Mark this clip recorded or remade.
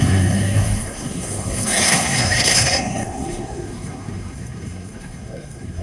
remade